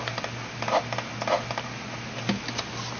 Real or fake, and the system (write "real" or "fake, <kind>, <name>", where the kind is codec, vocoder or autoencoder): real